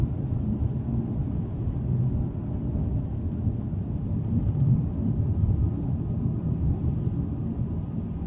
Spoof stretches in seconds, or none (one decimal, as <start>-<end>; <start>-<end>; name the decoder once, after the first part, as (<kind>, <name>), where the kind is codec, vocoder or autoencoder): none